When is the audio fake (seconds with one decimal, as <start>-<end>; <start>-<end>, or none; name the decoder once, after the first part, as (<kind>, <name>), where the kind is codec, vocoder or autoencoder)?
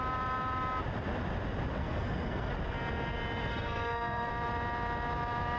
1.8-2.5 (codec, SNAC); 3.5-4.3